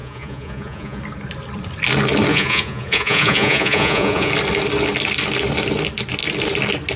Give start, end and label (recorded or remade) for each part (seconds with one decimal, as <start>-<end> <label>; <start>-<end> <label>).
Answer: 0.0-1.0 remade; 1.0-2.3 recorded; 2.3-4.3 remade; 4.3-7.0 recorded